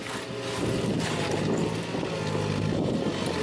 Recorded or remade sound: recorded